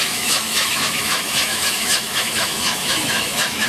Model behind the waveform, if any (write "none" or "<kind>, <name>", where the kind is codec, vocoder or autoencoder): autoencoder, DAC-VAE